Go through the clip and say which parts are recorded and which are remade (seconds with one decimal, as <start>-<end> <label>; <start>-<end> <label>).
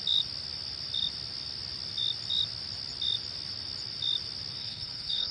0.0-4.6 recorded; 4.6-5.3 remade